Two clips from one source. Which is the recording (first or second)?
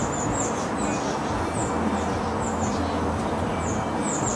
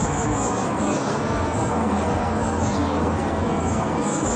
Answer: first